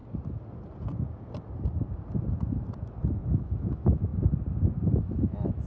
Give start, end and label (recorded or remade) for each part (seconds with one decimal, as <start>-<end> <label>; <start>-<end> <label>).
0.0-3.2 recorded; 3.2-4.1 remade; 4.1-5.0 recorded; 5.0-5.7 remade